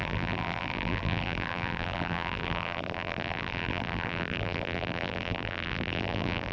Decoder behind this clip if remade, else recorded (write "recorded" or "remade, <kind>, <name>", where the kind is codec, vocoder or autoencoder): remade, vocoder, BigVGAN v2